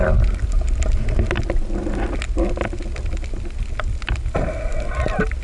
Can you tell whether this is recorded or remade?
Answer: recorded